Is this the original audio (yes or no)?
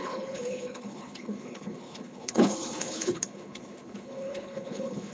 no